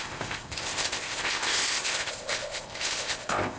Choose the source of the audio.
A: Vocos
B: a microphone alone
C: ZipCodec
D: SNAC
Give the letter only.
C